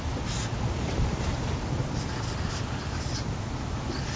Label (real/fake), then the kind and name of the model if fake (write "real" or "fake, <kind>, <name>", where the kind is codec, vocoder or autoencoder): real